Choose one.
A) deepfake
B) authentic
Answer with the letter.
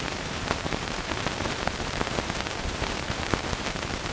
A